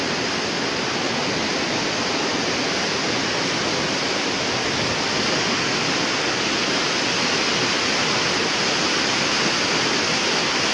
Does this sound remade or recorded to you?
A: recorded